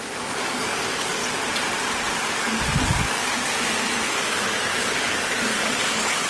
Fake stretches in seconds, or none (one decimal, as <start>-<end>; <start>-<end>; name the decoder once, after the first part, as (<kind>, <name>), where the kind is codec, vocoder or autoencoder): 0.0-1.2 (codec, DAC); 2.2-6.3